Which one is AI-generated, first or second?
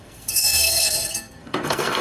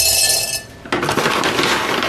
first